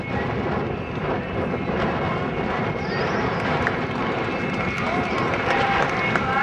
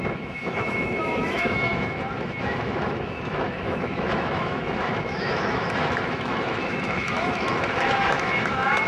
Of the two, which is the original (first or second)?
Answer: first